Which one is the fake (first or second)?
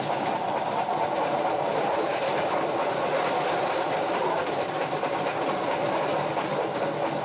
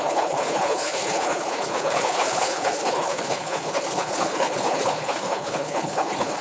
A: second